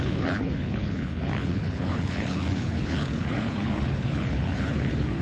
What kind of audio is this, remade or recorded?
remade